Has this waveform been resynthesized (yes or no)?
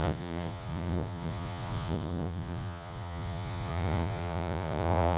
yes